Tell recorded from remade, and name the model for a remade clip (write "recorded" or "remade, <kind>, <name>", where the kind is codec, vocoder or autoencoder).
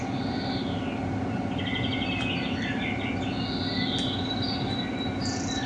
recorded